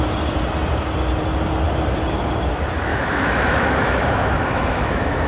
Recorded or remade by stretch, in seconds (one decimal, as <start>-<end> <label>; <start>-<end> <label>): 0.0-2.9 recorded; 2.9-5.3 remade